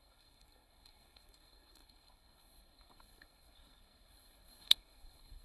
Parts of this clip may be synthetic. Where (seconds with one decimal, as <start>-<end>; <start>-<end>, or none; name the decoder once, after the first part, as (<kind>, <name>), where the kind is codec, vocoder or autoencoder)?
0.0-5.4 (codec, SNAC)